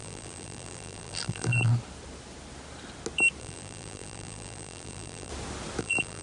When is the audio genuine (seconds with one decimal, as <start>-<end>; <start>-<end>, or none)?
1.7-3.4; 5.3-5.8